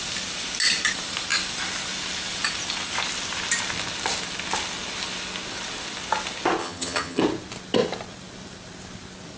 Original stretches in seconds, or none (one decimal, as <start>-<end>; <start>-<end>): 0.0-6.6; 7.2-9.4

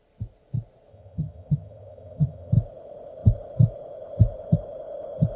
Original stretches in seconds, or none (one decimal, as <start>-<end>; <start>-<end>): 0.0-0.9; 2.5-5.4

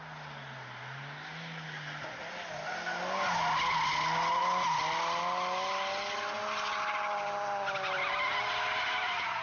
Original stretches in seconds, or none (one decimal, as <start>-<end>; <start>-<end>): 0.0-9.4

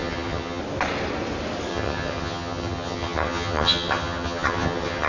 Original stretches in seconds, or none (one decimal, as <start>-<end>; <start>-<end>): 0.6-1.7

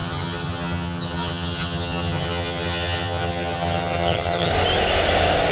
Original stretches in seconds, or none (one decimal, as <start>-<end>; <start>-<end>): 4.5-5.5

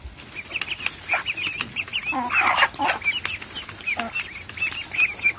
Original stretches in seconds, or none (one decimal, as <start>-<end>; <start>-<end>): 0.0-5.4

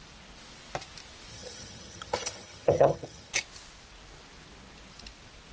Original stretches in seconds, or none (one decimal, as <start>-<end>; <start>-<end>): 0.0-1.3; 3.3-5.5